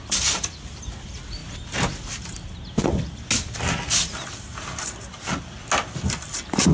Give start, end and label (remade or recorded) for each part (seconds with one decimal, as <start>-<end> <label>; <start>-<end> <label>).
0.0-6.7 recorded